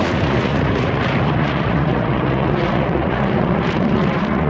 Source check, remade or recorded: remade